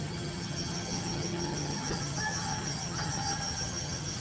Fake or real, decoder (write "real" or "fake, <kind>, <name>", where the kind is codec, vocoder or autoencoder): fake, vocoder, HiFi-GAN